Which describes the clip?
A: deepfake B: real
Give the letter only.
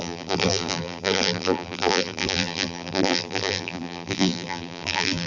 A